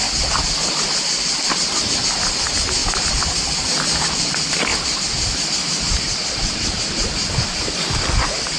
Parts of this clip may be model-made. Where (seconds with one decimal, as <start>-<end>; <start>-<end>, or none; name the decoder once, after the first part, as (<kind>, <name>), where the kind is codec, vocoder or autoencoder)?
2.8-4.2 (vocoder, BigVGAN v2)

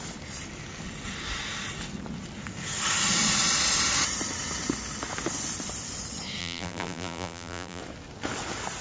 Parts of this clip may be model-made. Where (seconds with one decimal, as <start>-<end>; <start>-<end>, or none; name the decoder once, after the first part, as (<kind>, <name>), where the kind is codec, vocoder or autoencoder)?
6.4-7.8 (vocoder, BigVGAN v2)

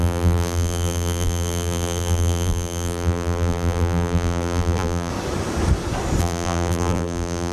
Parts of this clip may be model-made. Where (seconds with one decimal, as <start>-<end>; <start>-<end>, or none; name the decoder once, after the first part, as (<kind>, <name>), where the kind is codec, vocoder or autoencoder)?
0.0-5.1 (vocoder, BigVGAN v2); 6.2-7.5

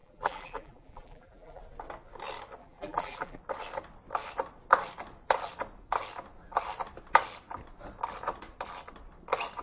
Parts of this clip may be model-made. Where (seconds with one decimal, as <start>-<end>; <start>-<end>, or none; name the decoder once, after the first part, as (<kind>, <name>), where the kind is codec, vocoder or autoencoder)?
0.0-1.6 (vocoder, BigVGAN v2); 2.6-3.4